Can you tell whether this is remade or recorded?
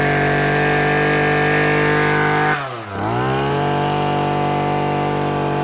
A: recorded